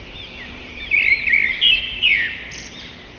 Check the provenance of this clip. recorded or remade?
remade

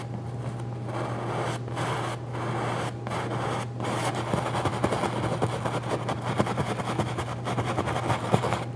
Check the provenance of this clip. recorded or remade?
recorded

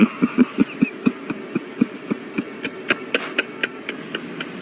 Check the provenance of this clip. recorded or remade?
recorded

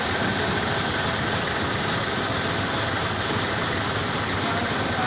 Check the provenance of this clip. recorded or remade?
recorded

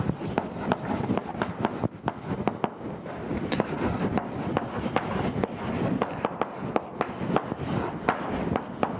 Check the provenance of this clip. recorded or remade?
recorded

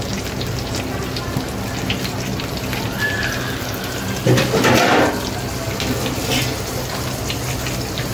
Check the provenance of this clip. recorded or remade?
recorded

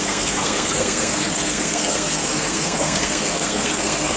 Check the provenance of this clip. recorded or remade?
remade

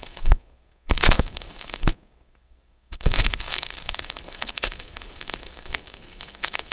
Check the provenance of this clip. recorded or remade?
remade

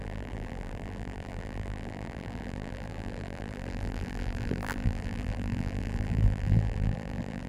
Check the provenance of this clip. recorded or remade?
remade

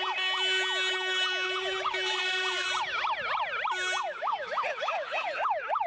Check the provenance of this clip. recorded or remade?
recorded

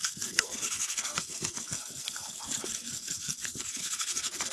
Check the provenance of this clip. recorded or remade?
remade